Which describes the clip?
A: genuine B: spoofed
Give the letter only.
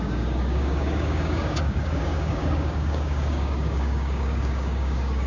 B